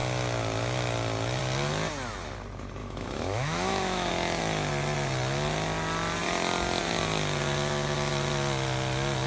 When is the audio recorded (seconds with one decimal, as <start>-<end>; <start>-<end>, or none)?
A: 0.0-2.8; 4.1-9.3

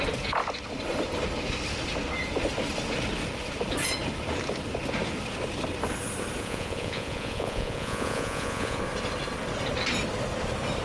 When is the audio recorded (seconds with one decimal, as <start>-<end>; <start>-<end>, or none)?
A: 0.0-6.4; 8.8-10.8

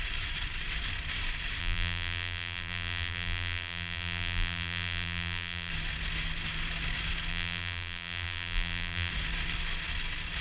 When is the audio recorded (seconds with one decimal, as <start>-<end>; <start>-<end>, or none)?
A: 0.0-1.6; 5.7-7.3; 9.1-10.4